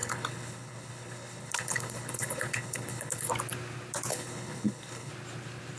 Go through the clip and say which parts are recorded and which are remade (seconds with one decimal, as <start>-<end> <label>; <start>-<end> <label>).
0.0-3.3 remade; 3.3-4.1 recorded; 4.1-5.1 remade; 5.1-5.8 recorded